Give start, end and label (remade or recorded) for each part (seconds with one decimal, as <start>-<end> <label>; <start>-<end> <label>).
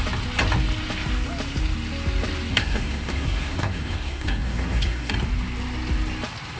0.0-2.5 recorded; 2.5-5.1 remade; 5.1-6.6 recorded